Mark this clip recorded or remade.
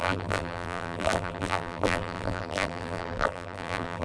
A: remade